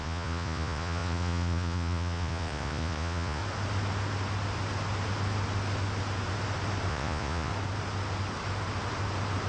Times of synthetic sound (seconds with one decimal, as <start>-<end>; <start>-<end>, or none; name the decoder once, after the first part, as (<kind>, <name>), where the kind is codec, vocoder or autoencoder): 0.0-3.4 (vocoder, Vocos); 6.9-7.5